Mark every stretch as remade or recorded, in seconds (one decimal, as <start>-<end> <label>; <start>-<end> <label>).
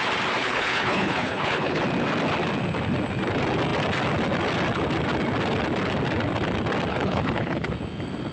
0.0-0.4 recorded; 0.4-1.8 remade; 1.8-6.9 recorded; 6.9-7.7 remade; 7.7-8.3 recorded